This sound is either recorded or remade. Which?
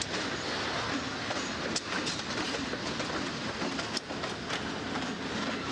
recorded